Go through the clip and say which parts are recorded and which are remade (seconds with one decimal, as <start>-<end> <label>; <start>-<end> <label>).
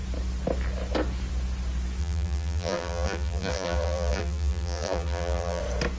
0.0-2.0 recorded; 2.0-5.6 remade; 5.6-6.0 recorded